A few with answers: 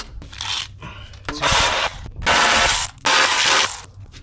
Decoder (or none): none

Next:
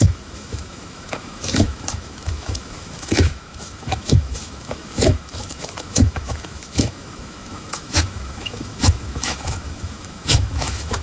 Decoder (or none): autoencoder, DAC-VAE